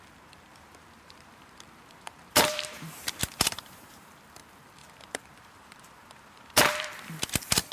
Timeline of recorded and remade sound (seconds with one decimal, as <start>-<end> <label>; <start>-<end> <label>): 0.0-0.5 recorded; 0.5-4.1 remade; 4.1-4.8 recorded; 4.8-6.9 remade; 6.9-7.7 recorded